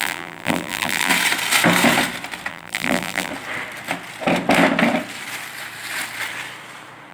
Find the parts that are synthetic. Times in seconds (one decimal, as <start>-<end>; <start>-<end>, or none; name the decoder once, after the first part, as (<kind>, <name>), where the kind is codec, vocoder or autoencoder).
0.0-1.1 (vocoder, BigVGAN v2); 2.5-3.3